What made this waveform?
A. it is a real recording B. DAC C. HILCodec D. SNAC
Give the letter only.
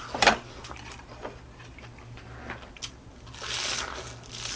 A